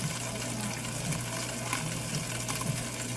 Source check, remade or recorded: recorded